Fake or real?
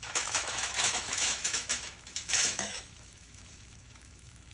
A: fake